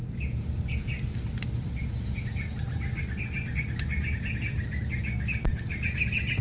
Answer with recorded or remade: recorded